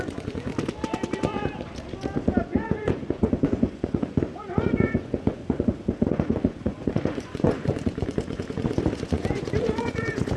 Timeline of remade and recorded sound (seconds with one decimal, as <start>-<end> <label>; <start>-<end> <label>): 0.0-0.5 remade; 0.5-2.4 recorded; 2.4-10.4 remade